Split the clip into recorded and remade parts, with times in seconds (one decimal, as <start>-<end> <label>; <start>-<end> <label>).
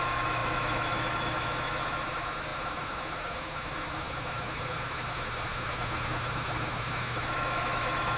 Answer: 0.0-8.2 remade